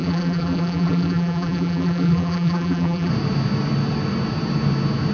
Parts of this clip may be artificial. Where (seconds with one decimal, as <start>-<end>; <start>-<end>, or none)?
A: 0.0-3.1